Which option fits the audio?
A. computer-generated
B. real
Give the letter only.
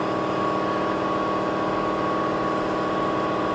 B